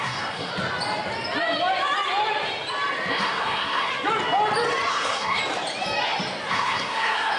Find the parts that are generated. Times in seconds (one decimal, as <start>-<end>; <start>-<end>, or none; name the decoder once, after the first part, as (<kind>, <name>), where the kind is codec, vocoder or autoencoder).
0.0-0.5 (codec, SNAC); 3.1-3.9; 4.9-5.4; 6.5-7.4